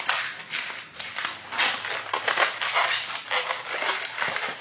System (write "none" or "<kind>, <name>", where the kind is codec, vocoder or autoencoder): none